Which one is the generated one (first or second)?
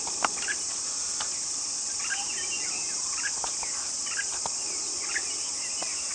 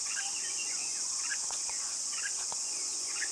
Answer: second